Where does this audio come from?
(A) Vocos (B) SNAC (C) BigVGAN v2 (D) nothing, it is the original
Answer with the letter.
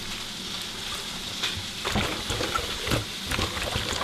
D